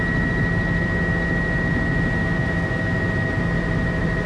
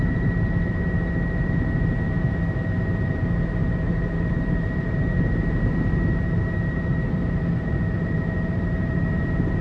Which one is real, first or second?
first